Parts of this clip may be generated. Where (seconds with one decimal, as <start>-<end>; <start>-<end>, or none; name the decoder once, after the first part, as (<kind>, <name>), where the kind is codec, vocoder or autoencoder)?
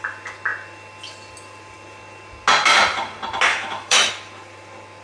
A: 3.5-4.1 (autoencoder, DAC-VAE)